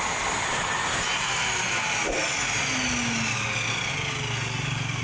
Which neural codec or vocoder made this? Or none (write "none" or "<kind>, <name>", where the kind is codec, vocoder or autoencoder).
none